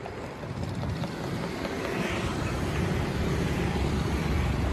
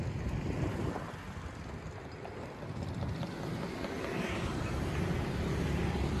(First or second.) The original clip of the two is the second